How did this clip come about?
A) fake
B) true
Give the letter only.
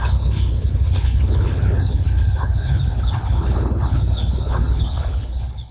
A